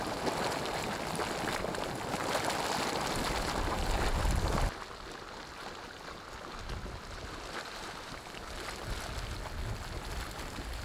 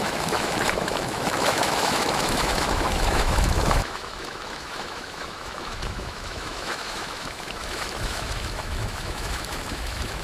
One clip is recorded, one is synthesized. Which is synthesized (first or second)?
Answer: second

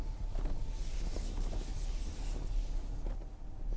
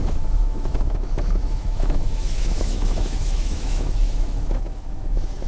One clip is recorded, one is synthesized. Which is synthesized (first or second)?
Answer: second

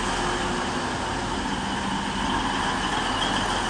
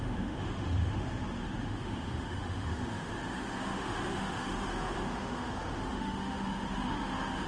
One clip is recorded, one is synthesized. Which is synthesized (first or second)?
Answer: second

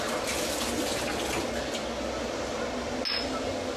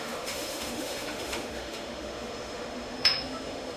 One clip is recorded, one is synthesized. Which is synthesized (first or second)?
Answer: second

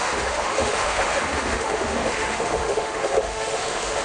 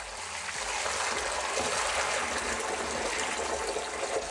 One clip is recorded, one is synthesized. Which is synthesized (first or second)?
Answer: first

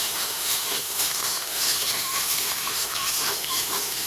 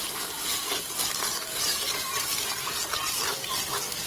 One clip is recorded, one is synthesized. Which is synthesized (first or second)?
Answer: first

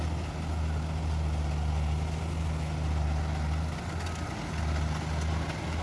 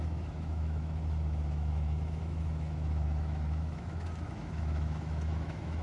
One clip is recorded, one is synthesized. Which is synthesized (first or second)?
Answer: second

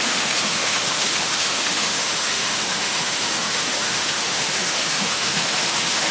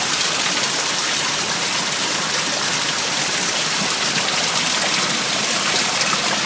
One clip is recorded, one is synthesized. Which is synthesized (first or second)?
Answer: first